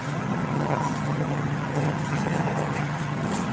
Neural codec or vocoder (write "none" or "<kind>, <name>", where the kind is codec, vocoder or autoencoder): vocoder, HiFi-GAN